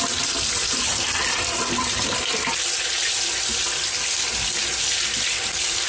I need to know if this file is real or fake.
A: real